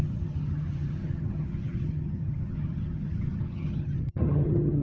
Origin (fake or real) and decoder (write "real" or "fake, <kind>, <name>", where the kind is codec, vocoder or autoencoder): fake, vocoder, HiFi-GAN